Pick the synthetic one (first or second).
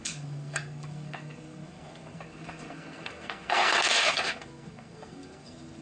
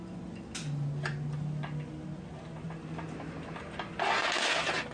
first